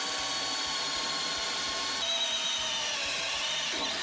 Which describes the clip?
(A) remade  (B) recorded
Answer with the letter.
B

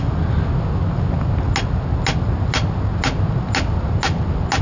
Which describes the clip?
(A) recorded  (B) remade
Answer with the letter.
A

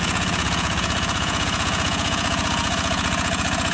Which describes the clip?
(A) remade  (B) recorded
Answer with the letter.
A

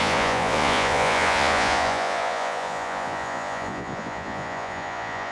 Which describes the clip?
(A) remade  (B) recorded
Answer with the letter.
A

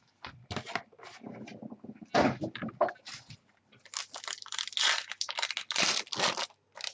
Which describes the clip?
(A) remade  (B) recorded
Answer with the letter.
B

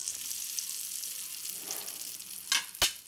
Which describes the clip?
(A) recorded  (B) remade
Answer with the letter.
A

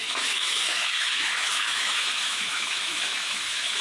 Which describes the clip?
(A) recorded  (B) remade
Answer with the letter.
B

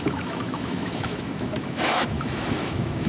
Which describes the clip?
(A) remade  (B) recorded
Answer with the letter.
A